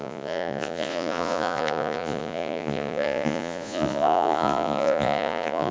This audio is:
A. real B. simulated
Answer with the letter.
B